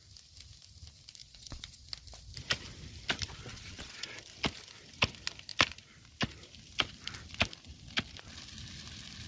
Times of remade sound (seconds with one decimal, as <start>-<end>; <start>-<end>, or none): 1.2-1.9; 3.5-4.2